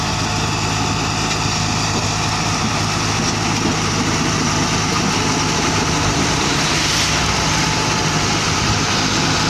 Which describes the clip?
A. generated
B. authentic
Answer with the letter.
B